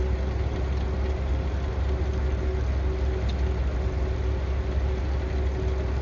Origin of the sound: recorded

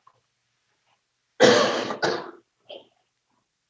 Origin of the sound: recorded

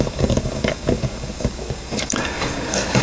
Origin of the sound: remade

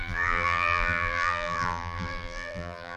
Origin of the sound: remade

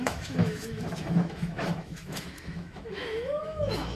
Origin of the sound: remade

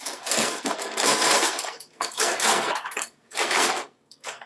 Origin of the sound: remade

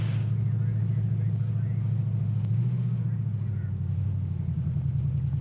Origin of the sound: recorded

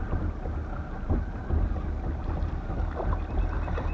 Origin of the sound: recorded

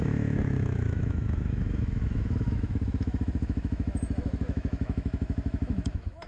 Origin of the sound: remade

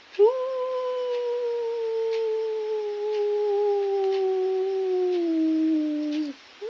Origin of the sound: recorded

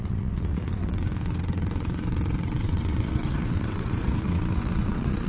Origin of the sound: remade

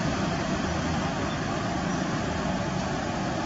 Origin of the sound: remade